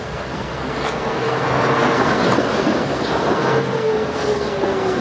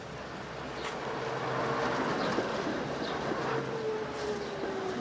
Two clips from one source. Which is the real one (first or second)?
second